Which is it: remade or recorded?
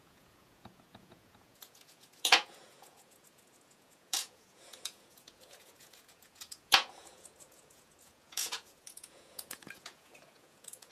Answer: remade